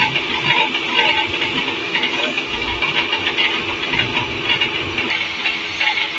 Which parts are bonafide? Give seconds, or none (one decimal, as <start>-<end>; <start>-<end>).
0.0-1.8; 3.3-6.2